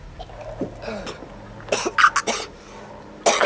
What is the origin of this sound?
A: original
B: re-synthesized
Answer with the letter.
A